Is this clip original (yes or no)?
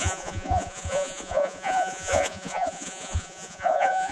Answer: no